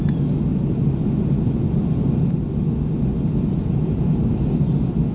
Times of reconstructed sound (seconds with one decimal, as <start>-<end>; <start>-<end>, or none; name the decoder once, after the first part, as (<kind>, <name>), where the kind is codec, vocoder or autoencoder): none

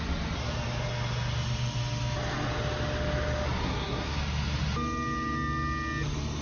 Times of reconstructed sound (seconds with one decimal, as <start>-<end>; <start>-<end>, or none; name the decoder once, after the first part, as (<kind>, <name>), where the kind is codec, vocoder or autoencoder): 3.6-4.2 (codec, SNAC)

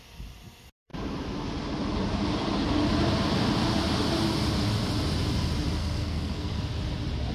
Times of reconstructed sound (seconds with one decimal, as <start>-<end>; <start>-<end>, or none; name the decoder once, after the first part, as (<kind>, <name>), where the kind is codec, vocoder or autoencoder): 5.8-6.6 (codec, SNAC)

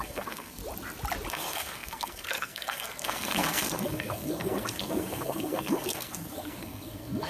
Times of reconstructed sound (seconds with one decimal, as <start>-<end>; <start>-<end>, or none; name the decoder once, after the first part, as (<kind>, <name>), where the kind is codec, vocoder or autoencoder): 0.0-0.6 (codec, SNAC); 1.3-7.3

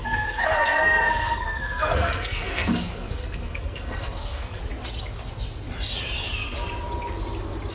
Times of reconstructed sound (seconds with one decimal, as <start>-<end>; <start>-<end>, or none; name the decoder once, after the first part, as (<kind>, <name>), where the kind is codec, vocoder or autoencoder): 0.0-4.6 (codec, SNAC)

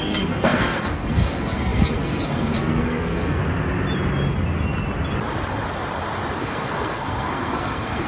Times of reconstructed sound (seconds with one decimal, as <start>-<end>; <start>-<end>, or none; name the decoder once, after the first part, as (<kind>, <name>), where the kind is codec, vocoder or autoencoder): 0.0-3.4 (codec, SNAC); 6.4-8.1